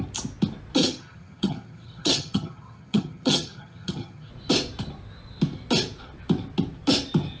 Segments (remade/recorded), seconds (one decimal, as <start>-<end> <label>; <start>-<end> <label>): 0.0-0.8 recorded; 0.8-4.3 remade; 4.3-7.4 recorded

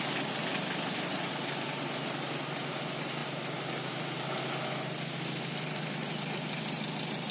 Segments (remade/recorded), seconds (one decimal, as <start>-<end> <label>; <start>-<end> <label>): 0.0-7.3 recorded